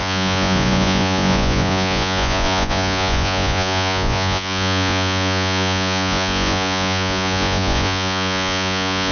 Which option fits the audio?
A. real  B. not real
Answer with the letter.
B